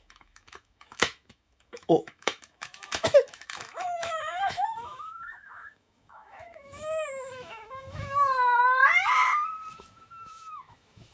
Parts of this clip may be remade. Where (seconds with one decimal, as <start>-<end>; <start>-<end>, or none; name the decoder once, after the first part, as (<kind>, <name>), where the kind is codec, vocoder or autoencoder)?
0.0-8.8 (autoencoder, DAC-VAE); 9.7-11.1